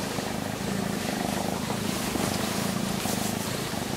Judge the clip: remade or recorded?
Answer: remade